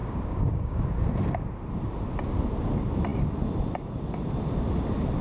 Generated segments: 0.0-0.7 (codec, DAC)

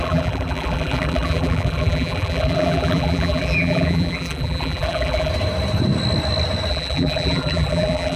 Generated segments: 0.0-5.3 (vocoder, BigVGAN v2); 6.7-8.2

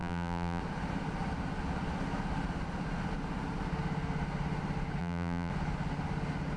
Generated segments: 0.0-0.6 (vocoder, BigVGAN v2); 5.0-5.5